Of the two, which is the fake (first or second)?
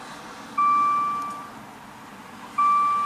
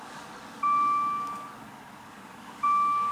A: second